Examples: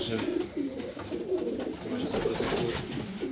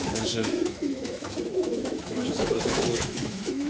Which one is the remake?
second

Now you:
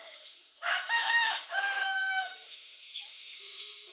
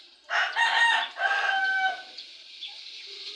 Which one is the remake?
first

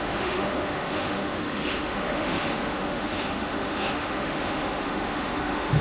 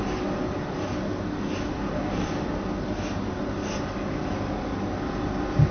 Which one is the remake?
first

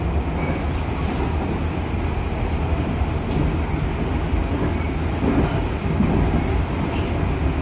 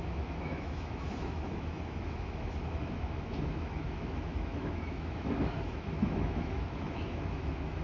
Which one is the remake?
second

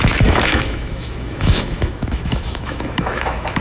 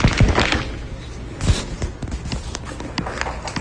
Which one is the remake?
first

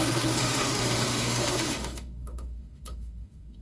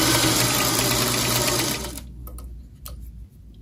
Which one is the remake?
first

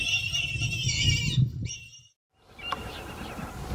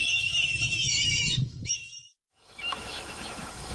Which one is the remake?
second